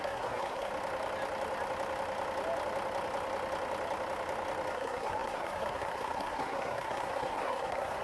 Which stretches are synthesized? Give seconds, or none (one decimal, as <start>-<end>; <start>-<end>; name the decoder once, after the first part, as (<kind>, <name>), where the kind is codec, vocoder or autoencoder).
0.0-0.7 (codec, SNAC); 4.7-8.0